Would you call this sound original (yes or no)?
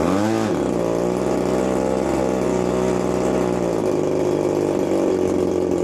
yes